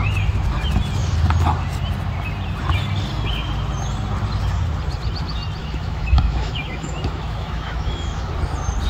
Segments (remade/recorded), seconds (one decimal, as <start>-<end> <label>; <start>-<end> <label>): 0.0-5.6 recorded; 5.6-8.3 remade; 8.3-8.9 recorded